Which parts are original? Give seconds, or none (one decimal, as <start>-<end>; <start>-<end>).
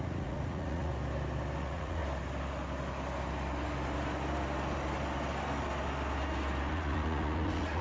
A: 0.9-1.6; 2.0-6.7